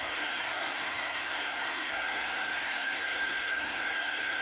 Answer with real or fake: fake